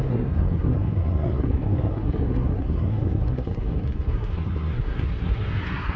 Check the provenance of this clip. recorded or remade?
remade